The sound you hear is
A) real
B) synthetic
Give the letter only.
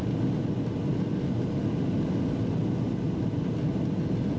A